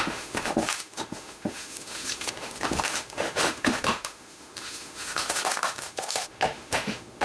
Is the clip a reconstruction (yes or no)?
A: yes